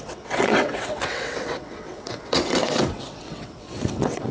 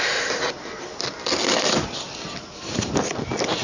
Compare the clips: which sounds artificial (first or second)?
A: first